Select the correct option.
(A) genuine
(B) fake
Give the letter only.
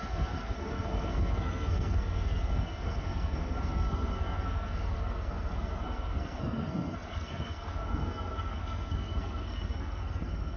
B